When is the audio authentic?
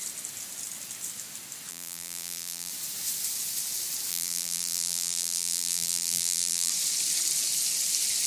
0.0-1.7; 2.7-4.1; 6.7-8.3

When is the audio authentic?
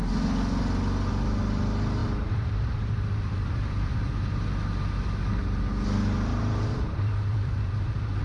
0.0-2.0; 3.9-6.3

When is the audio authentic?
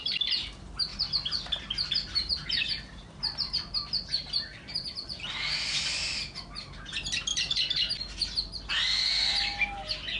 0.0-0.9; 5.3-10.2